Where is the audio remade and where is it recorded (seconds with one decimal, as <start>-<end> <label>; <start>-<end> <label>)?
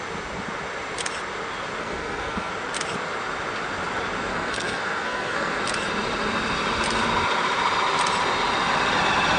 0.0-1.8 recorded; 1.8-2.5 remade; 2.5-4.3 recorded; 4.3-5.6 remade; 5.6-9.4 recorded